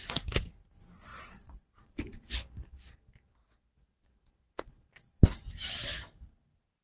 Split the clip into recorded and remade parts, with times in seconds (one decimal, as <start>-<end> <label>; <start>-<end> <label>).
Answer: 0.0-1.1 recorded; 1.1-2.3 remade; 2.3-3.3 recorded; 3.3-4.9 remade; 4.9-6.8 recorded

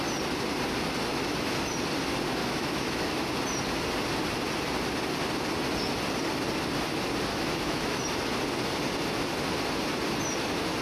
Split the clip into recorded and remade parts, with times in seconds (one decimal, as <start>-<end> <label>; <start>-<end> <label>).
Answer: 0.0-1.1 recorded; 1.1-1.6 remade; 1.6-2.4 recorded; 2.4-3.3 remade; 3.3-7.3 recorded; 7.3-8.0 remade; 8.0-10.8 recorded

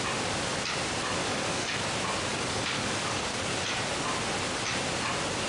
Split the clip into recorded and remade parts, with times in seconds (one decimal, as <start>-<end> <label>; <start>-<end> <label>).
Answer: 0.0-1.2 recorded; 1.2-1.7 remade; 1.7-2.3 recorded; 2.3-3.4 remade; 3.4-5.5 recorded

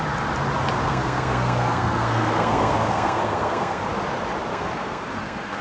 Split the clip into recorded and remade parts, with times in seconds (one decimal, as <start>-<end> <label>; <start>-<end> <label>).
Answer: 0.0-0.8 recorded; 0.8-3.8 remade; 3.8-4.5 recorded; 4.5-5.6 remade

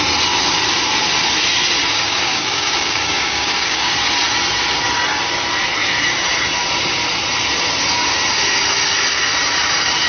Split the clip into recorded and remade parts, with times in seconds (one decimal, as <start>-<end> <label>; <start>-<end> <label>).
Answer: 0.0-1.9 recorded; 1.9-3.9 remade; 3.9-10.1 recorded